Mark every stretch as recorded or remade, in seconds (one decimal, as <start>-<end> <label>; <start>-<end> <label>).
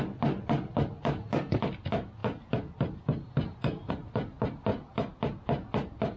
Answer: 0.0-6.2 recorded